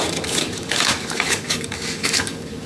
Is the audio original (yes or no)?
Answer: no